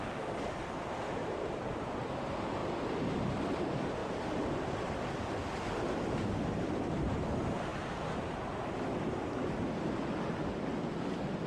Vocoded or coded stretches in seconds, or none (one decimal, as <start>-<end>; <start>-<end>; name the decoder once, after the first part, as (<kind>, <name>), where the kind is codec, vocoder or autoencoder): 0.0-4.0 (vocoder, BigVGAN v2); 4.7-7.7